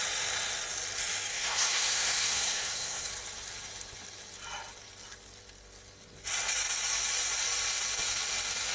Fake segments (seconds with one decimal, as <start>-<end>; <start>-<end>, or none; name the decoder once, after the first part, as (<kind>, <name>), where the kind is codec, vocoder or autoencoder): 1.3-3.1 (codec, SNAC)